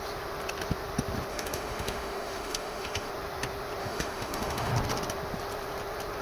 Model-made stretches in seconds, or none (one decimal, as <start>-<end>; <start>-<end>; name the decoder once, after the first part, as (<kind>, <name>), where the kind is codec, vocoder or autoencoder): 1.3-3.1 (autoencoder, DAC-VAE); 3.8-4.7

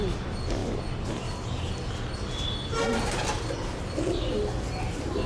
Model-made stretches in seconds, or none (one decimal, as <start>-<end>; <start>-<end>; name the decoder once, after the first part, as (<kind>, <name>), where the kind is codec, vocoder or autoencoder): none

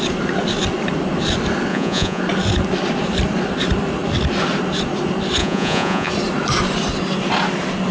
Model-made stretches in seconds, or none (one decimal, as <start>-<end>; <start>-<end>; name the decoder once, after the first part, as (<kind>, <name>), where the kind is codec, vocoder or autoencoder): 1.7-2.2 (vocoder, Vocos); 5.4-6.1

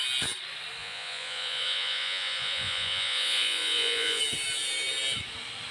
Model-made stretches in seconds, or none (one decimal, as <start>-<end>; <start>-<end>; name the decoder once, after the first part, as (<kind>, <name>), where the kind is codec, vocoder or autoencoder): 0.8-4.2 (vocoder, Vocos)

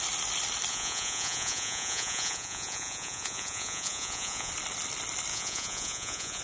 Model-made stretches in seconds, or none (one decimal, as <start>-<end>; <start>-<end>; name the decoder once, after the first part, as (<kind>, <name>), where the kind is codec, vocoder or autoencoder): 0.7-4.5 (vocoder, Vocos); 5.3-6.4